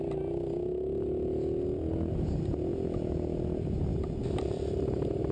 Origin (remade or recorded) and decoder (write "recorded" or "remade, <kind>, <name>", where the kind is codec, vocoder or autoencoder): recorded